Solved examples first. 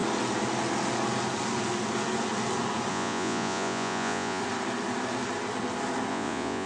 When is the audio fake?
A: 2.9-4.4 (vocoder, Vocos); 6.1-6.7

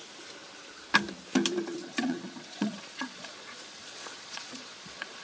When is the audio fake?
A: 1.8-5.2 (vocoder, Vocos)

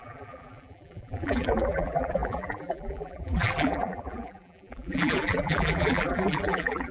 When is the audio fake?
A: 0.0-6.9 (vocoder, BigVGAN v2)

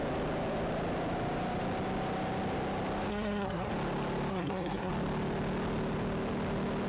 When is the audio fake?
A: 3.1-3.7 (codec, SNAC); 4.3-4.9

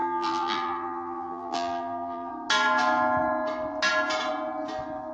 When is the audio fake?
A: 0.0-2.3 (vocoder, BigVGAN v2)